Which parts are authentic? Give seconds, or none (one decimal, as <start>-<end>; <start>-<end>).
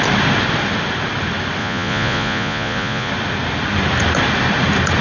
0.0-1.6; 3.1-5.0